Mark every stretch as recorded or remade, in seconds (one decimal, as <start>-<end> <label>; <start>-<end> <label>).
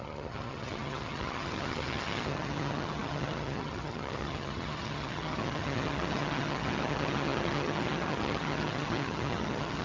0.0-9.8 remade